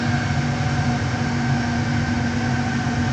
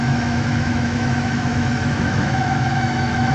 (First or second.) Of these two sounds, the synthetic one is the second